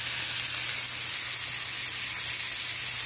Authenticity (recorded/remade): recorded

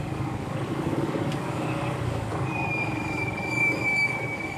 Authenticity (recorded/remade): remade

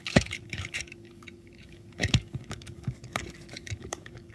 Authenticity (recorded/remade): remade